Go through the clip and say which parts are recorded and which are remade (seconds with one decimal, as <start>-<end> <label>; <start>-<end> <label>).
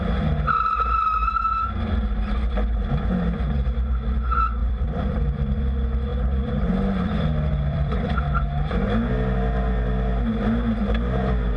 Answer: 0.0-4.6 recorded; 4.6-5.6 remade; 5.6-6.1 recorded; 6.1-8.1 remade; 8.1-11.6 recorded